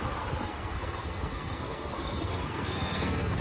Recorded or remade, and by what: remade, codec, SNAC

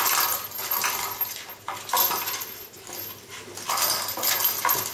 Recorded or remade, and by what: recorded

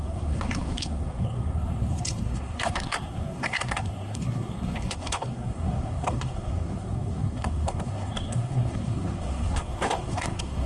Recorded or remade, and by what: remade, codec, SNAC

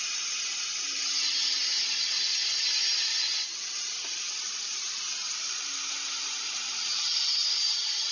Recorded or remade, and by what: recorded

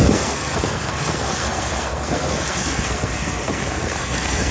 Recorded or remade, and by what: remade, codec, SNAC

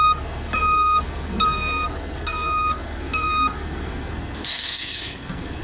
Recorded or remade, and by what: remade, codec, SNAC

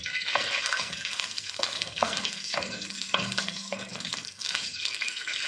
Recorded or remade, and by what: remade, codec, SNAC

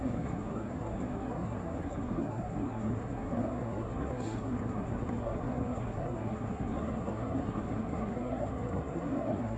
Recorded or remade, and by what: remade, codec, SNAC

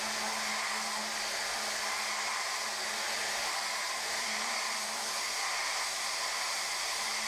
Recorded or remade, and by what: recorded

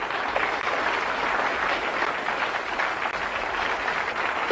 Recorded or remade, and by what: recorded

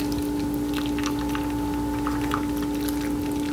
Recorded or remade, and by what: recorded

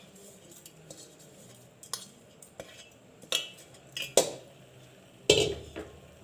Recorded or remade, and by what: recorded